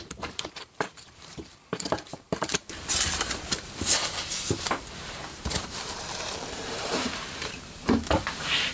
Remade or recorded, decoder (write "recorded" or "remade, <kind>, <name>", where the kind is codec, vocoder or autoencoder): remade, vocoder, BigVGAN v2